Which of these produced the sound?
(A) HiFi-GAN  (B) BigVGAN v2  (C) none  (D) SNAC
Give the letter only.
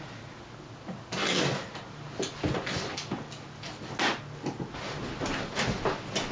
C